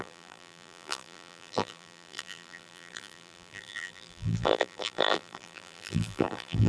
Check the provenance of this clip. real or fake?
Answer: fake